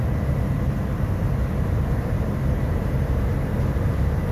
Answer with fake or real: real